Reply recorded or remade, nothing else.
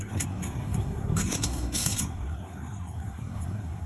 remade